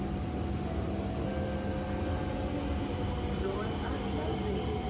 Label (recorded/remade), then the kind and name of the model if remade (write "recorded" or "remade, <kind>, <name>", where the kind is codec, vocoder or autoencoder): recorded